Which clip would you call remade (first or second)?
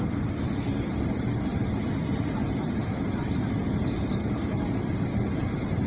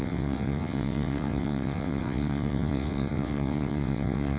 second